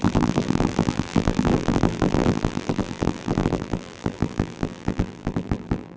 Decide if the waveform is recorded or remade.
remade